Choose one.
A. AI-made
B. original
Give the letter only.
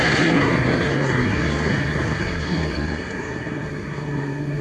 A